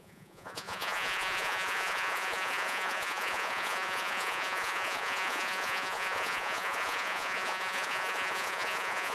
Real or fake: fake